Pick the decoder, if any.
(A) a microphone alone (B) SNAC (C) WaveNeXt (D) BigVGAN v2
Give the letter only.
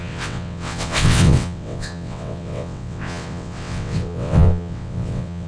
C